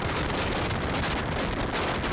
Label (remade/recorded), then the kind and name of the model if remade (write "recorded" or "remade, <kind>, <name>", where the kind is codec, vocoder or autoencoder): recorded